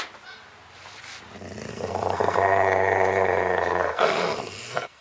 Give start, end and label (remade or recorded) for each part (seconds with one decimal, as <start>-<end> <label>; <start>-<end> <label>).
0.0-1.7 recorded; 1.7-5.0 remade